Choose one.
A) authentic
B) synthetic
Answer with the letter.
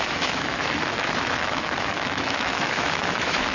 B